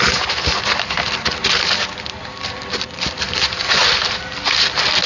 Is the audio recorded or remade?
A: recorded